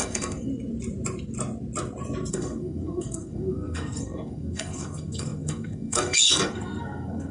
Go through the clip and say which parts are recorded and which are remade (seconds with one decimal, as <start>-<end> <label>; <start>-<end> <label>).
0.0-0.5 remade; 0.5-2.3 recorded; 2.3-7.3 remade